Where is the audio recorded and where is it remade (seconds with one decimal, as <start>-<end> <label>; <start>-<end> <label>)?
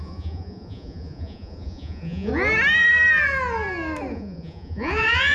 0.0-2.3 remade; 2.3-4.1 recorded; 4.1-5.3 remade